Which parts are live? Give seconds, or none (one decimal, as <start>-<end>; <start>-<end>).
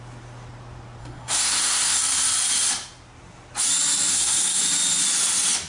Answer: 0.0-1.0; 2.0-4.1; 4.6-5.7